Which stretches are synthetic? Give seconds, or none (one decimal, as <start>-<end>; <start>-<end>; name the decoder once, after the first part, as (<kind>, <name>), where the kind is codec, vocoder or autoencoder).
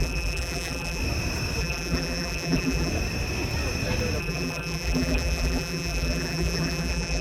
0.0-1.0 (vocoder, BigVGAN v2); 1.6-2.9; 4.2-7.2